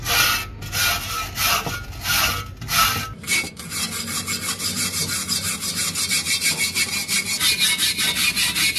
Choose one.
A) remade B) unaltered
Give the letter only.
B